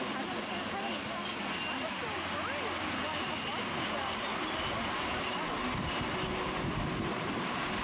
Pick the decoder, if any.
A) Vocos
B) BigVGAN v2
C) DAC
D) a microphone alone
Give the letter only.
D